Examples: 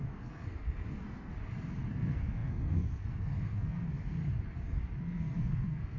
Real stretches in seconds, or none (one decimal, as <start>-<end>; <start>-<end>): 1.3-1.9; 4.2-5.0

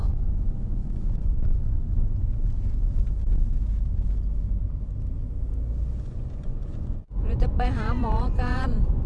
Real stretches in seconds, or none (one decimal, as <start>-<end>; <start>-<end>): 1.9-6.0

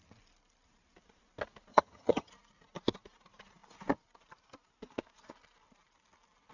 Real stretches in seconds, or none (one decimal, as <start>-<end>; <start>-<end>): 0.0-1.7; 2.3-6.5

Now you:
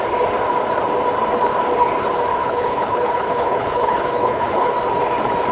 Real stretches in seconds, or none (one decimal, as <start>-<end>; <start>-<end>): 0.0-2.3; 4.7-5.5

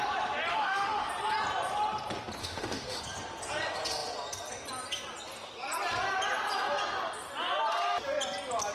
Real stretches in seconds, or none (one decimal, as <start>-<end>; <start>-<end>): 0.0-0.5; 1.1-2.4; 3.0-8.7

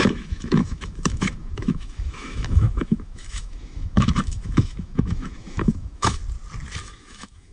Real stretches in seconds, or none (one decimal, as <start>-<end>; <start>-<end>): 6.2-6.8